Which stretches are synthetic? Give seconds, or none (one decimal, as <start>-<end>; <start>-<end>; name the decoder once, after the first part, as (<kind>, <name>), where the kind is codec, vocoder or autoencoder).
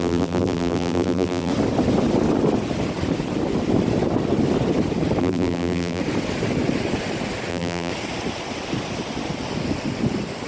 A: 0.0-1.5 (vocoder, BigVGAN v2); 5.2-6.0; 7.5-7.9